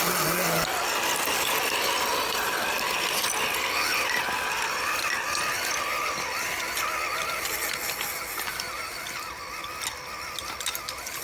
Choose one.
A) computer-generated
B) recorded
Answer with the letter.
B